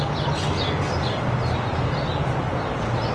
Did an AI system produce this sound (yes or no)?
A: no